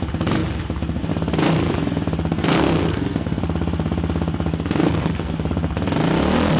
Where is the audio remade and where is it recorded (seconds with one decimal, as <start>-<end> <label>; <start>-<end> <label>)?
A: 0.0-2.3 recorded; 2.3-3.4 remade; 3.4-4.5 recorded; 4.5-5.3 remade; 5.3-6.6 recorded